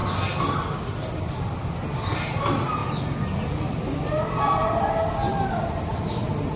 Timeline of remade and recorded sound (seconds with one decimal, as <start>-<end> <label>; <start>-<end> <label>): 0.0-6.6 recorded